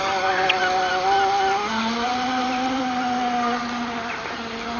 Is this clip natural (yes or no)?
yes